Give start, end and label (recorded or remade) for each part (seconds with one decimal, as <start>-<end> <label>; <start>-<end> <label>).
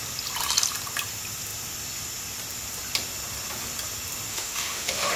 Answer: 0.0-4.3 recorded; 4.3-5.2 remade